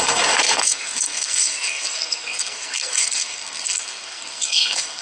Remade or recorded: remade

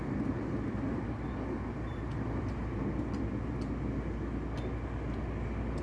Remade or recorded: recorded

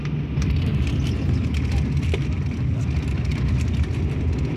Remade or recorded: recorded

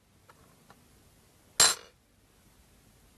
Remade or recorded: recorded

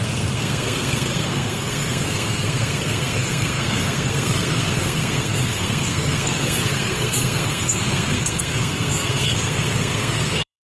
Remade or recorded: remade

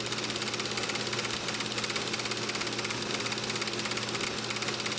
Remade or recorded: recorded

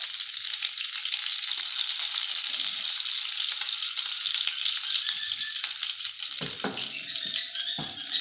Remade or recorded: recorded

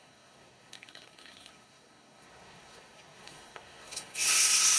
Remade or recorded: remade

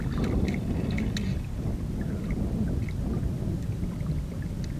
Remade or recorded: recorded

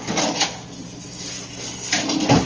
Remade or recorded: recorded